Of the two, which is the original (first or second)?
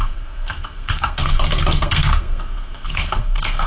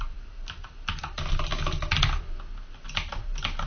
second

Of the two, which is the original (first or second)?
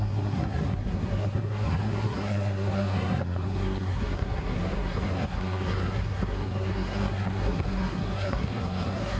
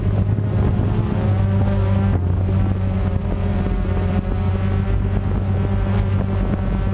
second